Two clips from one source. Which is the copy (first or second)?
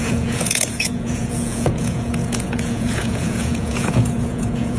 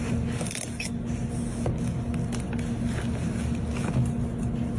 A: first